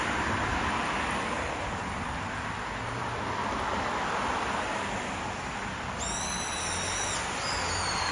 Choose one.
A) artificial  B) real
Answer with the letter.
B